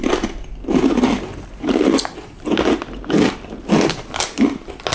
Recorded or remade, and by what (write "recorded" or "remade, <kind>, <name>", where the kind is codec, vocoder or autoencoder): recorded